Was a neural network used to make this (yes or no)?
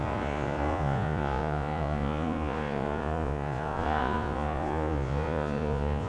yes